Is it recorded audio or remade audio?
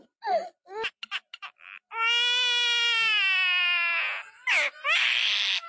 recorded